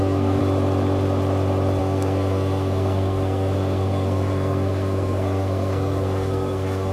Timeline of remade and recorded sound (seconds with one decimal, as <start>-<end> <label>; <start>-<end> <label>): 0.0-0.4 remade; 0.4-1.8 recorded; 1.8-6.9 remade